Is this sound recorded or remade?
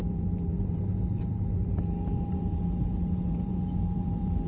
remade